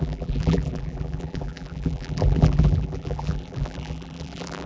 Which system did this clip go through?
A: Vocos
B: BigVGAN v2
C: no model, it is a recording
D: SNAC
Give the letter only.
B